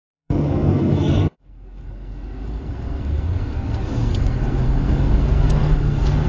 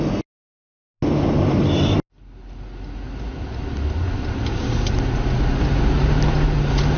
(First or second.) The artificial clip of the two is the first